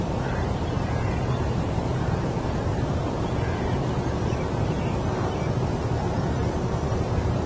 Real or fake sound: fake